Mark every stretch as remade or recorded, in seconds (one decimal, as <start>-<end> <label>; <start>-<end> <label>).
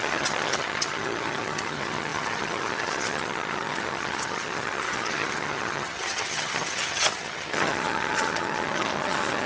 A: 0.0-9.5 remade